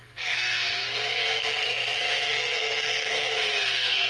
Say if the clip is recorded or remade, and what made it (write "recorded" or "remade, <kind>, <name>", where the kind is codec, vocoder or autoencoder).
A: remade, codec, SNAC